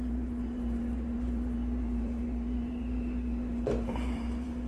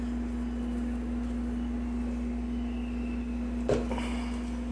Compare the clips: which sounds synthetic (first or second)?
first